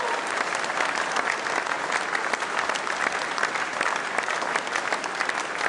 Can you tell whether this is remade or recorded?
recorded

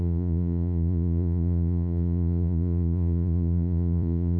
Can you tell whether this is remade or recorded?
remade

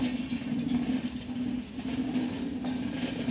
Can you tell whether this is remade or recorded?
recorded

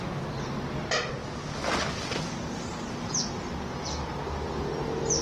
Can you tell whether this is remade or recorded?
recorded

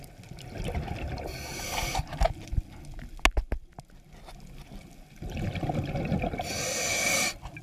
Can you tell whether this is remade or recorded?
recorded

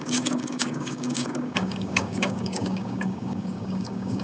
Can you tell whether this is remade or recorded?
remade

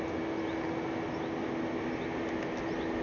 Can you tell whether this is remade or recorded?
recorded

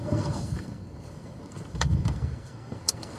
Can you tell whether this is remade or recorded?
remade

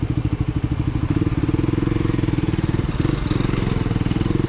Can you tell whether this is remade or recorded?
recorded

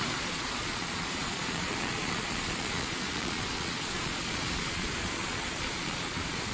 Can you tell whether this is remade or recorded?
remade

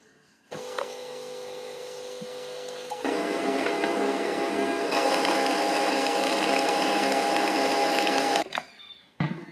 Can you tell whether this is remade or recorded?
remade